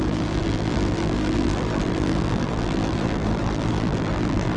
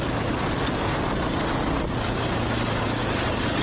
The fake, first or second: first